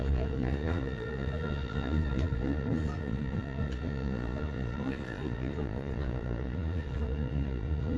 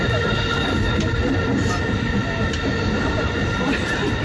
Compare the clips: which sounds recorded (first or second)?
second